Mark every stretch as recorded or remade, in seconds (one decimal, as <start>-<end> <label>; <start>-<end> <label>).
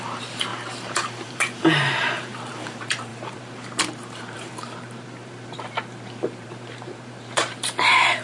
0.0-8.2 remade